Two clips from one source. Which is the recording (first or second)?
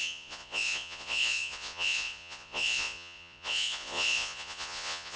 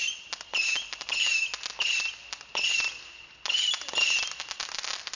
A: second